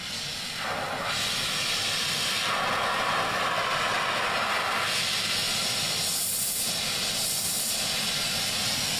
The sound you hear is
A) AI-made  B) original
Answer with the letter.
B